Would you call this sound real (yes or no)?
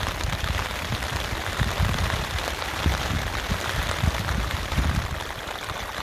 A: no